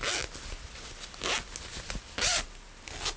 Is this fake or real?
real